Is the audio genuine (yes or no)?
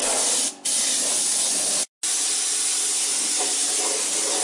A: yes